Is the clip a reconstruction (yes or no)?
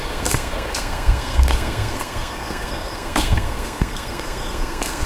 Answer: yes